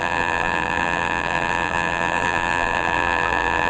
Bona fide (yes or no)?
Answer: no